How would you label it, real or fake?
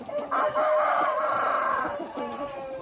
real